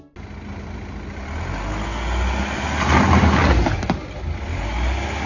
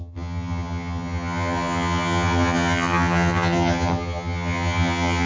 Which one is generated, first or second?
second